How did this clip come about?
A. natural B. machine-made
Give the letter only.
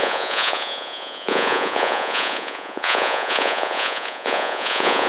B